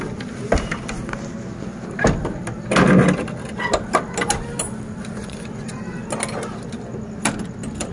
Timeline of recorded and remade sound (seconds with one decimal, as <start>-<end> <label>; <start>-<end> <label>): 0.0-5.2 recorded; 5.2-5.7 remade; 5.7-7.9 recorded